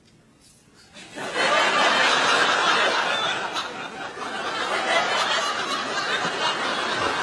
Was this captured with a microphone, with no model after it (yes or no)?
yes